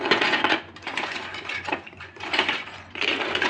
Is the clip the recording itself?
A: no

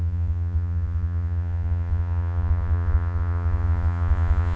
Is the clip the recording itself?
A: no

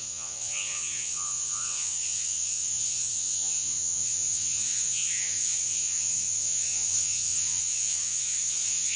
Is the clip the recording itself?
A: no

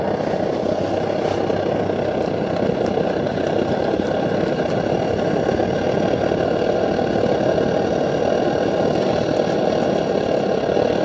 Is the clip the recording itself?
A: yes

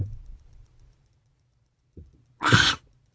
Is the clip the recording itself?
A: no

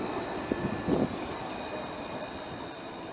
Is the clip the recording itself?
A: yes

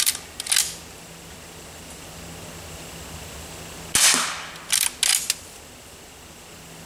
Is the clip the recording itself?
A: yes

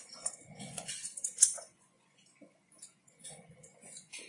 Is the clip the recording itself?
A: no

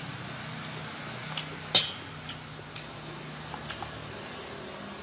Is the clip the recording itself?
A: yes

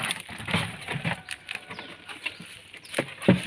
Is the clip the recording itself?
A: yes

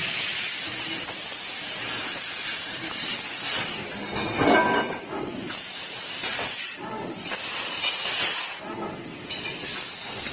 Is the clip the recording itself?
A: yes